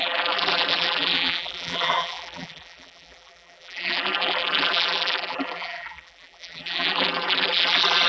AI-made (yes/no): yes